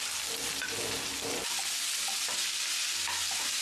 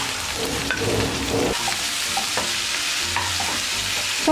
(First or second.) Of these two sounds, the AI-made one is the second